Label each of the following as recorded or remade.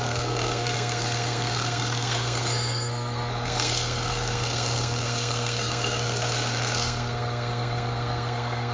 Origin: remade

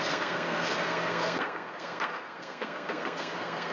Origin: remade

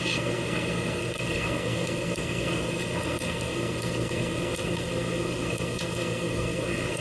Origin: remade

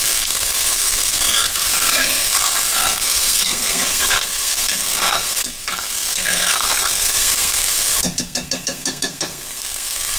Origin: remade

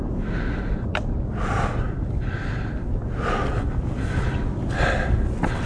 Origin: recorded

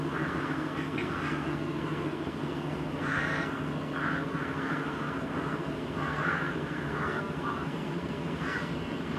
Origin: remade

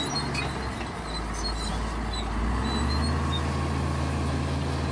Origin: recorded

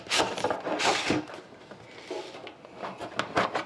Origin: recorded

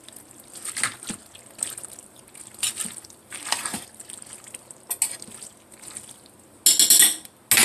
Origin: recorded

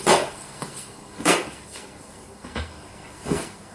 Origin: remade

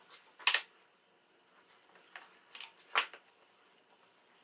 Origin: recorded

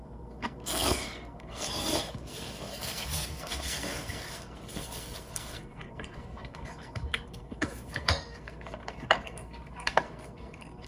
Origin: remade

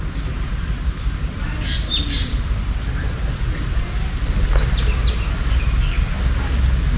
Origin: recorded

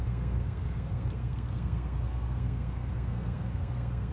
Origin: remade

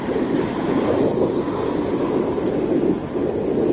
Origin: recorded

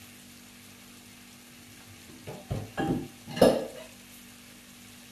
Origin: recorded